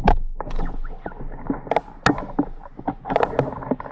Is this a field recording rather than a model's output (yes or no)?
yes